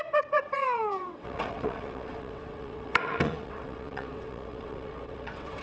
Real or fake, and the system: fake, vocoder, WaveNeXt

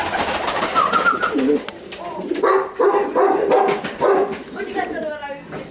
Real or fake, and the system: real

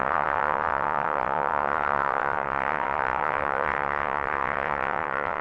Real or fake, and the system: fake, vocoder, WaveNeXt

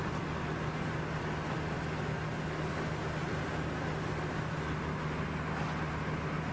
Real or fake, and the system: real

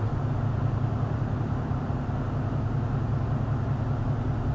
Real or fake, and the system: real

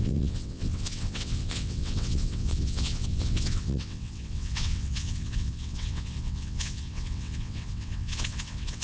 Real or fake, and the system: fake, vocoder, WaveNeXt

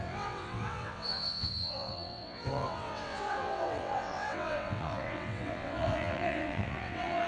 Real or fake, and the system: fake, vocoder, WaveNeXt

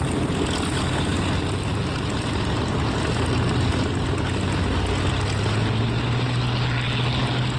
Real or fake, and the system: real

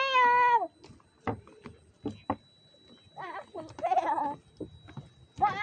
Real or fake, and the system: real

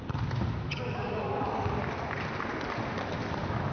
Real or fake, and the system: real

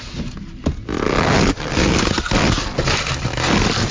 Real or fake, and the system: real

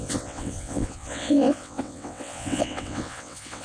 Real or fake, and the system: fake, vocoder, WaveNeXt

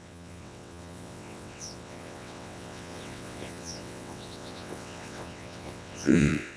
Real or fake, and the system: fake, vocoder, WaveNeXt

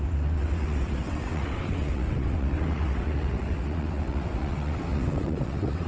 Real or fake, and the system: fake, vocoder, WaveNeXt